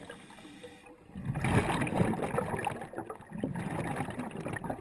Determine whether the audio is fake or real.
real